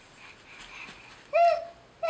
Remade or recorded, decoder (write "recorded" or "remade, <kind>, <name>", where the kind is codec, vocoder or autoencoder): recorded